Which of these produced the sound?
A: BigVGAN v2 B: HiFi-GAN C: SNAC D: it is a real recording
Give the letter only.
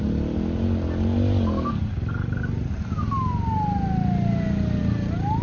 D